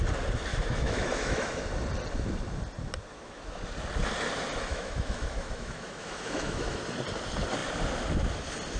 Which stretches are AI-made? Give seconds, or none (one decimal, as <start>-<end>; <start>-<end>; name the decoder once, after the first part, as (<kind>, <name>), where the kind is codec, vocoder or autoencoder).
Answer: 0.5-1.6 (autoencoder, DAC-VAE); 3.1-3.6; 4.7-6.8